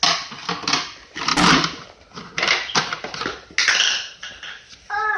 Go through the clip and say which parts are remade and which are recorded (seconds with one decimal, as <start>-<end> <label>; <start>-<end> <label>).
0.0-5.2 recorded